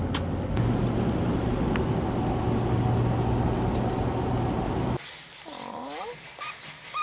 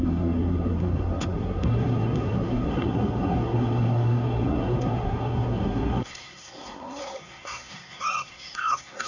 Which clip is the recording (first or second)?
first